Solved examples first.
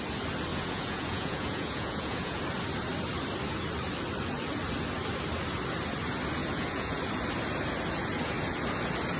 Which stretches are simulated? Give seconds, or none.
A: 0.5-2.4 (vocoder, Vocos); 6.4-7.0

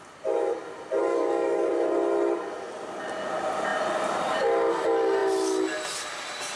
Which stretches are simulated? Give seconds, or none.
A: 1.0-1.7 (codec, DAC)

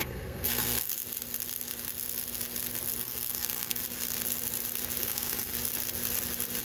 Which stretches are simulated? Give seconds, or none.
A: 0.0-1.0 (codec, SNAC); 3.0-3.8; 5.0-5.5

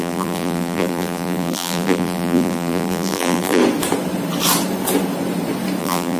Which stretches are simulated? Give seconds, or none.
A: 0.0-3.6 (vocoder, BigVGAN v2); 5.8-6.2

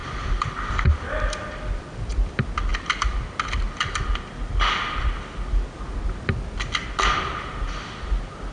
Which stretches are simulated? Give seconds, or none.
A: none

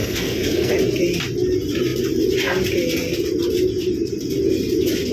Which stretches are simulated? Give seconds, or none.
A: 0.0-0.7 (codec, SNAC)

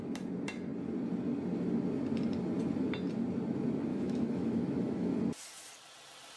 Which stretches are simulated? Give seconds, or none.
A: 3.9-5.3 (autoencoder, DAC-VAE)